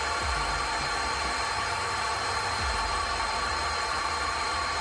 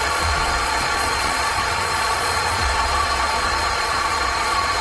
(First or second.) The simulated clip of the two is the second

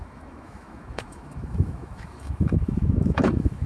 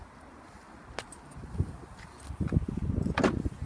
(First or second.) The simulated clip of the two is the first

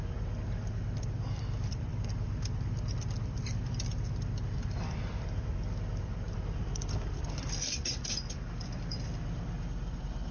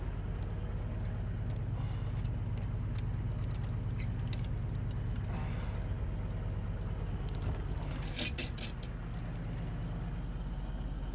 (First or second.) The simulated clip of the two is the first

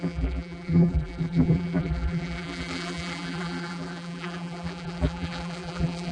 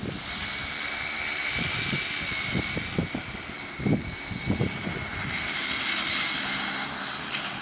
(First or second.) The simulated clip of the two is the first